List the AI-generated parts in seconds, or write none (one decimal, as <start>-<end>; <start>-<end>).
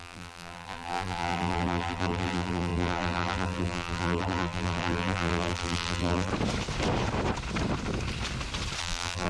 0.0-6.3; 8.8-9.3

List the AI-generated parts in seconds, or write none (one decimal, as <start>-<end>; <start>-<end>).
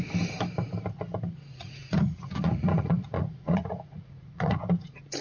1.5-4.6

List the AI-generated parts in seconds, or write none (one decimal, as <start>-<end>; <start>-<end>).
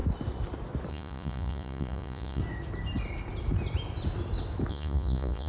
0.9-2.4; 4.7-5.5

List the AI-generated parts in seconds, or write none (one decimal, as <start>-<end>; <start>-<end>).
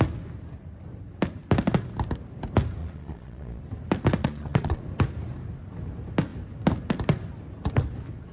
2.8-3.6; 4.2-4.8